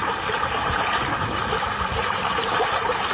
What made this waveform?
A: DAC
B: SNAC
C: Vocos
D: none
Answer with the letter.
D